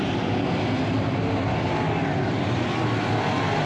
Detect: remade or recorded recorded